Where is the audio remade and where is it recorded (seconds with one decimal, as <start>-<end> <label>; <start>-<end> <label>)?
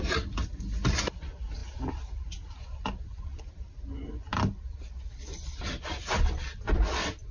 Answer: 0.0-7.3 recorded